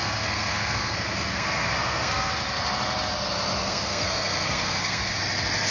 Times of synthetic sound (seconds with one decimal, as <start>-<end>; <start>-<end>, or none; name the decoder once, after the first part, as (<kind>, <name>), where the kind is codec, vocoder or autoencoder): 0.0-2.3 (codec, SNAC); 3.6-5.2